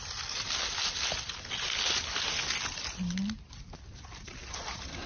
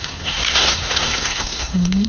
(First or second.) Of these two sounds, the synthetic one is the second